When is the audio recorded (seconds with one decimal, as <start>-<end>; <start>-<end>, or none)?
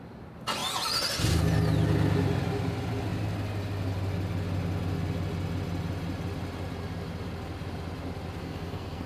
0.0-8.4